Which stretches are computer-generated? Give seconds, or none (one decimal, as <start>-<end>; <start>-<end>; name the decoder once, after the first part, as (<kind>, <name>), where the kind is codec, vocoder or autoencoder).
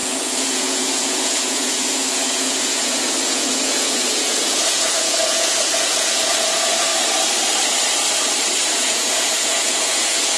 0.0-6.9 (vocoder, Vocos); 8.7-10.4